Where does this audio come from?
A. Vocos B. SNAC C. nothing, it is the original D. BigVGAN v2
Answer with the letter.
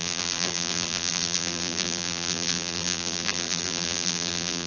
D